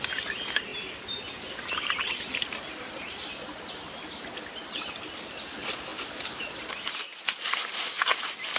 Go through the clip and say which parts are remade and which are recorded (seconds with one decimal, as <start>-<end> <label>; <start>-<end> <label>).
0.0-8.6 recorded